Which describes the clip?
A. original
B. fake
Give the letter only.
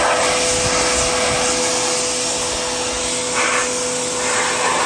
A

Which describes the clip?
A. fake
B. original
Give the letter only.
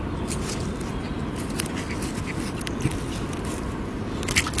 B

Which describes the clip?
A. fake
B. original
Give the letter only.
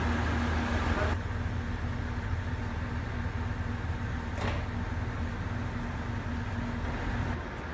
B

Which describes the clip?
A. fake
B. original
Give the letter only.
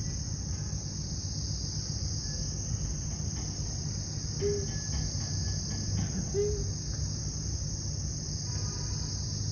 B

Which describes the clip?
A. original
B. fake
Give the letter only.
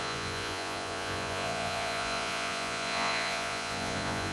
B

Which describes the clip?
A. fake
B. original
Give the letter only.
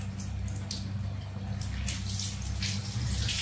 B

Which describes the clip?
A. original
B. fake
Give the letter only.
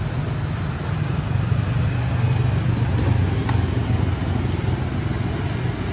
A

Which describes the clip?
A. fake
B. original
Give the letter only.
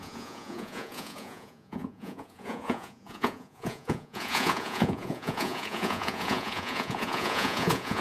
A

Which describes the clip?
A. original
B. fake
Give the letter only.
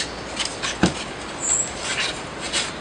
A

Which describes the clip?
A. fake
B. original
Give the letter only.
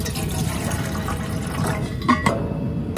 B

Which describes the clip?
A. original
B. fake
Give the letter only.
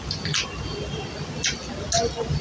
A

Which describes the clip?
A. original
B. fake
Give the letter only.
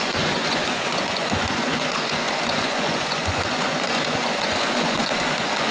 B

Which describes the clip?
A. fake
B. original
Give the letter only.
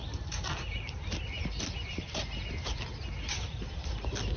B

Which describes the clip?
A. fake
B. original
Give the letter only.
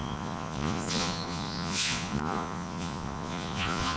A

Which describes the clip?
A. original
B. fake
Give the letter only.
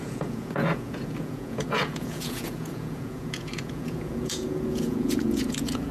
B